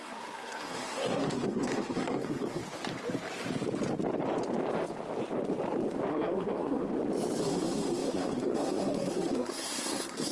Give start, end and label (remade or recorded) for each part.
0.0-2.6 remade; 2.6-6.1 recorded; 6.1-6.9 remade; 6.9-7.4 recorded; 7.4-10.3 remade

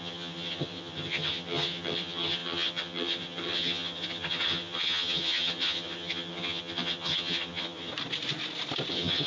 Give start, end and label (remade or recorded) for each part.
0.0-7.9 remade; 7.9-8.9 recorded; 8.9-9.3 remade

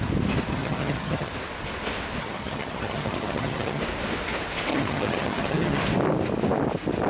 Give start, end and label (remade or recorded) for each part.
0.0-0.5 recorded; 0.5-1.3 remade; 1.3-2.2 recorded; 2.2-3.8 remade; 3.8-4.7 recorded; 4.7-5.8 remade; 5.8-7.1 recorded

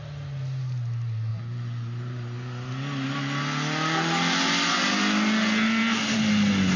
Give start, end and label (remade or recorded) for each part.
0.0-6.8 recorded